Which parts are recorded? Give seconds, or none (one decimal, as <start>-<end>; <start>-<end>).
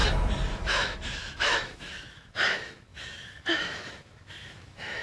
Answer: 0.0-0.5